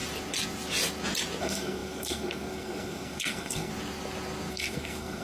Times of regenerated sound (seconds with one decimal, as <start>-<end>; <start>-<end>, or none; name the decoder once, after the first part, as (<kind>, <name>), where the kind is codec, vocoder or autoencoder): 1.4-3.7 (codec, SNAC); 4.5-5.2